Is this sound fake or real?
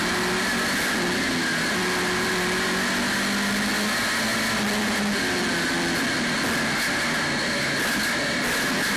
real